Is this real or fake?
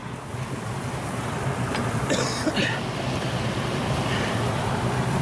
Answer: real